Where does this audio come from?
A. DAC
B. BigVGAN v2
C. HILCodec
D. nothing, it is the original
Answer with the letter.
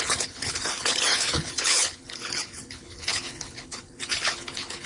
C